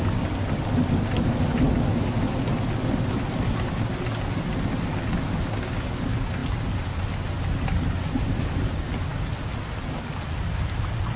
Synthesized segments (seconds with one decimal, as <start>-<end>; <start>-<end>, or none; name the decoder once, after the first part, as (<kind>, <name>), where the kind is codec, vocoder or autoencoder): none